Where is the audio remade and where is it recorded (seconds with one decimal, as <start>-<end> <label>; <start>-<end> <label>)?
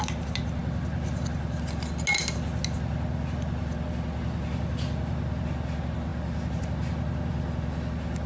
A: 0.0-8.3 recorded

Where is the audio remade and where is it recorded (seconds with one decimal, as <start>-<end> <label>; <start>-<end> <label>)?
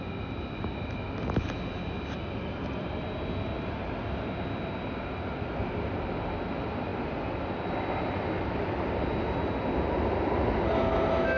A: 0.0-11.4 recorded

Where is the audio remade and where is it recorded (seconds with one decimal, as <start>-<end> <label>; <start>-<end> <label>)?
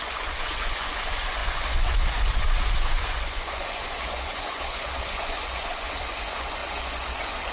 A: 0.0-7.5 remade